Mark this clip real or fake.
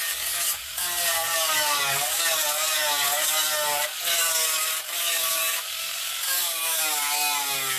fake